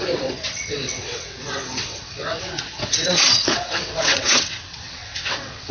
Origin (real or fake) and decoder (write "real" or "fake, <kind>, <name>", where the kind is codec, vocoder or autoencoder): fake, vocoder, WaveNeXt